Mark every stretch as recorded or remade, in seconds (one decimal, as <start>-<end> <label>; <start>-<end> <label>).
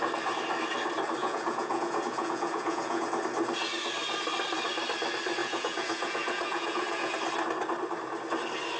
0.0-1.2 recorded; 1.2-3.1 remade; 3.1-5.4 recorded; 5.4-7.1 remade; 7.1-8.8 recorded